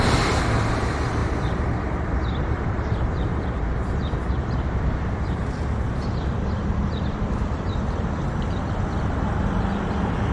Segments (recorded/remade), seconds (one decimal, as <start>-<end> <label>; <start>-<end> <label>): 0.0-1.2 recorded; 1.2-5.5 remade; 5.5-6.6 recorded; 6.6-8.2 remade; 8.2-10.3 recorded